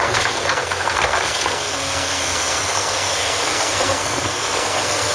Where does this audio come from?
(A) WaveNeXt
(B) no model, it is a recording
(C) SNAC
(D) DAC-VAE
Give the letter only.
C